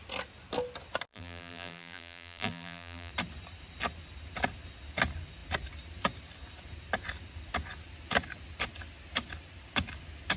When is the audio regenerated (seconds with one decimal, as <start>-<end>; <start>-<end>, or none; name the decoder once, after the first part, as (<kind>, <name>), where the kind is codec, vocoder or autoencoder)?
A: 1.1-3.1 (vocoder, BigVGAN v2)